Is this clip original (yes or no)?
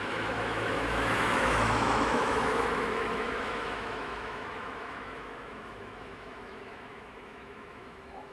no